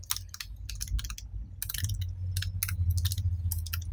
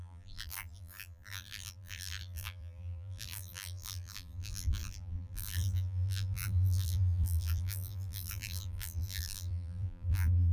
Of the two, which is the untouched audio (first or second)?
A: first